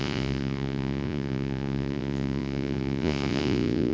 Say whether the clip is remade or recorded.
remade